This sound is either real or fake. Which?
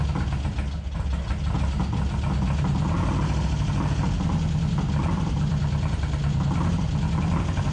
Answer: real